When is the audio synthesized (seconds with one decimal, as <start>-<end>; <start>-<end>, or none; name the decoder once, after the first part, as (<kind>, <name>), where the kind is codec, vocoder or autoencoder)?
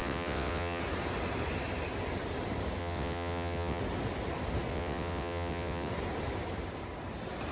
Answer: 0.0-0.8 (vocoder, WaveNeXt); 2.8-3.8; 4.7-5.9